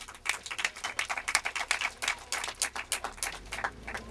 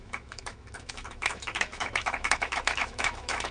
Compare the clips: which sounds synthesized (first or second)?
second